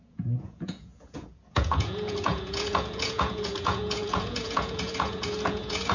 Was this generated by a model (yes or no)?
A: yes